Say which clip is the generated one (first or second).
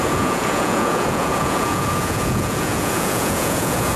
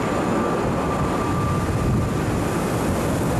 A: first